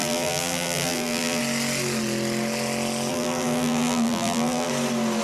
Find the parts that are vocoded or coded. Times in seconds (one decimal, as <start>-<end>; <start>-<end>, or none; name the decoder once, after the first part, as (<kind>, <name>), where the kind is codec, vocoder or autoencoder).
0.0-1.4 (vocoder, BigVGAN v2); 3.1-4.7